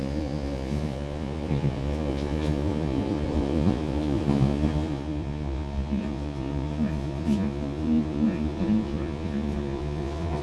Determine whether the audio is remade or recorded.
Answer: remade